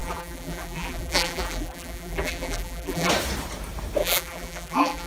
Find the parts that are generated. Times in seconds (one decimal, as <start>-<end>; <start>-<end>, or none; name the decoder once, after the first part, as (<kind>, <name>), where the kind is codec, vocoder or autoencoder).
0.0-3.1 (vocoder, BigVGAN v2); 4.0-5.1